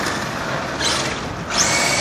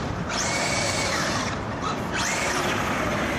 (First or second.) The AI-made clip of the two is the second